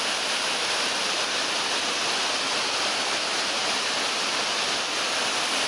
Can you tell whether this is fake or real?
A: real